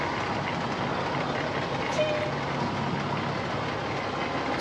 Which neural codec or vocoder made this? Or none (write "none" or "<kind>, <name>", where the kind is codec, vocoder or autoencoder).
none